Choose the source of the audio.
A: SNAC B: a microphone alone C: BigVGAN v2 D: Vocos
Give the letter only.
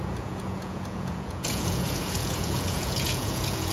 D